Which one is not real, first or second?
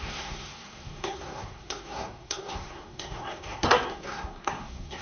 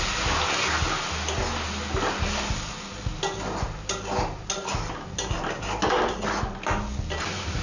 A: first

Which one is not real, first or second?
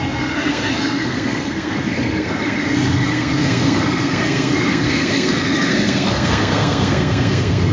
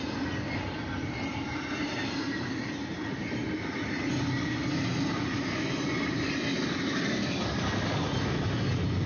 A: first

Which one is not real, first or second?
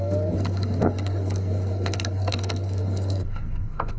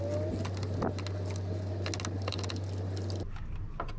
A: first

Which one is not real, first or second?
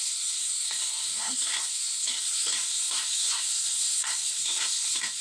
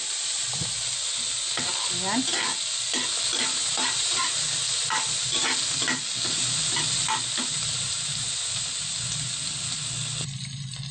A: first